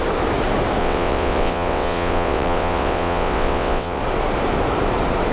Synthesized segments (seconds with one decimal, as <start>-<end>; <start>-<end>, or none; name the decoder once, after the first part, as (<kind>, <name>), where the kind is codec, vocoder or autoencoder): 0.8-4.0 (vocoder, WaveNeXt)